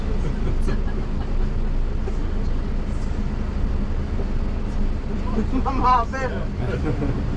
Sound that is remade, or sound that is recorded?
recorded